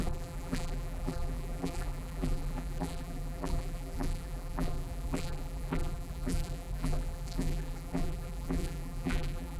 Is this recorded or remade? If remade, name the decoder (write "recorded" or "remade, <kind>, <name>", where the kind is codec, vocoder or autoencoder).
remade, vocoder, BigVGAN v2